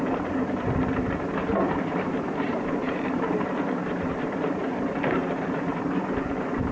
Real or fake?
fake